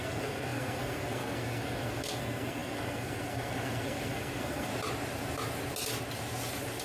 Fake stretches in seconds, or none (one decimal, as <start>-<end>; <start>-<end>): 0.0-4.7